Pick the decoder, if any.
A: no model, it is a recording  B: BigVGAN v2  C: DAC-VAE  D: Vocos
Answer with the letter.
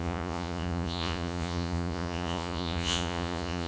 D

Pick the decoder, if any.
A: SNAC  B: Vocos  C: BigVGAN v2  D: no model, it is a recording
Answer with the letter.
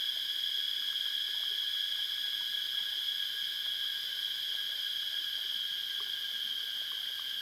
D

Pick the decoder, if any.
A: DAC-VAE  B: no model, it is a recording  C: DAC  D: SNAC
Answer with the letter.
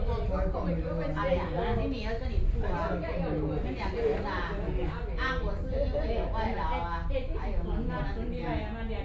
B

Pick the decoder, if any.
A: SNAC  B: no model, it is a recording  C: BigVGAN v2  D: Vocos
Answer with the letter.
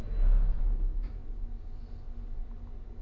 B